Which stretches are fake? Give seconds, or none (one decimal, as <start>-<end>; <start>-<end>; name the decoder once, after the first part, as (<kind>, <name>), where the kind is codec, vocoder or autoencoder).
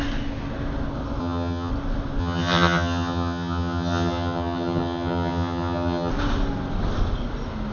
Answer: 1.2-1.7 (vocoder, HiFi-GAN); 2.2-6.1